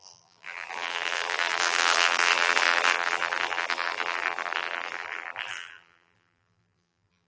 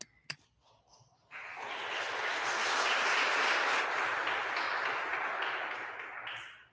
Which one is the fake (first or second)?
first